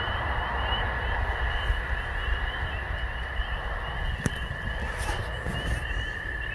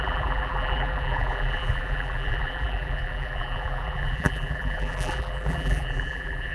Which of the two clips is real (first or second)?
first